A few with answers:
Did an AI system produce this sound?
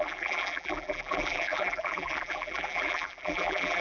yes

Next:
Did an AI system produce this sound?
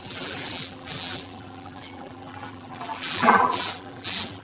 yes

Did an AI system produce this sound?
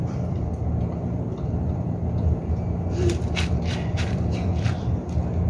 yes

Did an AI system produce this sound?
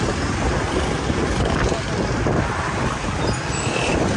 no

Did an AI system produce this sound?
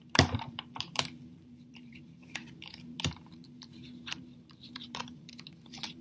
yes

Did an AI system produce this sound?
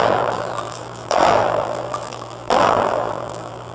yes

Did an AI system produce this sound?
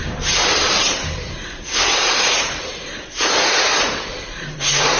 yes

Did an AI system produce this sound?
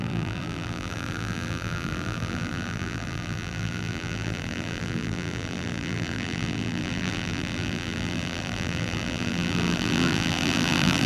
yes